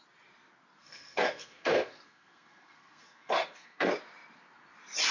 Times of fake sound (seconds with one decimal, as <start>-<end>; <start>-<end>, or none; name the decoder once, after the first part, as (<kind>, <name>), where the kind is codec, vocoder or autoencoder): 0.8-3.9 (codec, SNAC)